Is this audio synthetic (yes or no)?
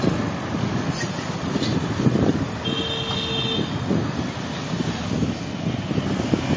no